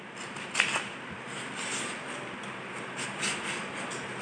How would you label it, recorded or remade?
recorded